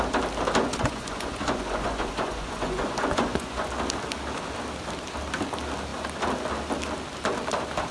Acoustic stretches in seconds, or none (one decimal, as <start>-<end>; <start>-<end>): 0.0-0.6; 3.7-7.9